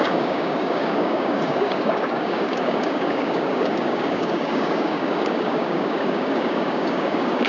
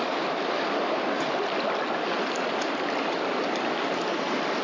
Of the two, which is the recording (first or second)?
second